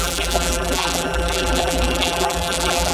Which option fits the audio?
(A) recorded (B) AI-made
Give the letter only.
B